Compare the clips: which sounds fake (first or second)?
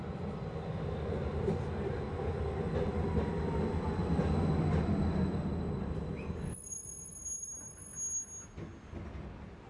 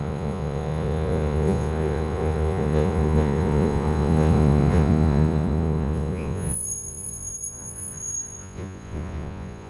second